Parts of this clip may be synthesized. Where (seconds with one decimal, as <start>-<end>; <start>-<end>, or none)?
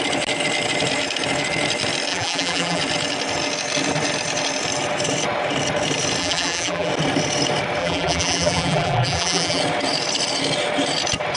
2.1-2.8; 6.2-6.9; 7.8-9.6